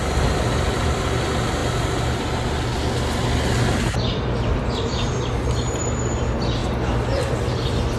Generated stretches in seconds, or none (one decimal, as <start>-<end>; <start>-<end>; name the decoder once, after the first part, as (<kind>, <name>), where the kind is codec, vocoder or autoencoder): 6.6-7.2 (vocoder, BigVGAN v2)